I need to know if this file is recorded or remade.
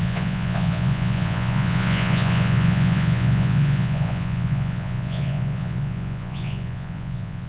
remade